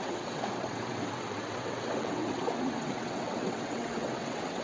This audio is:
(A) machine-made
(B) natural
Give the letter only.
A